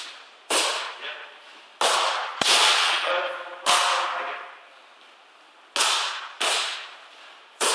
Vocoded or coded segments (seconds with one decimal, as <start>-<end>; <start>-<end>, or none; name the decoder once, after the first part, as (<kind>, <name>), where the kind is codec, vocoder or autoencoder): 2.3-3.1 (vocoder, Vocos)